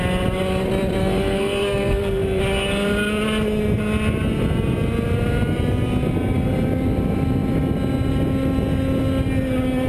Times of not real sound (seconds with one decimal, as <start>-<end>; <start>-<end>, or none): 1.0-2.4

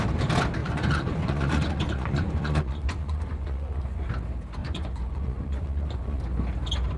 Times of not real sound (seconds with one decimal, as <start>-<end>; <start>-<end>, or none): 0.6-4.1; 4.6-6.2

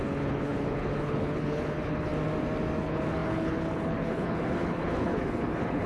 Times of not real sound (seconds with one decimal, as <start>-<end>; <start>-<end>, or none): 0.0-2.1; 2.8-5.9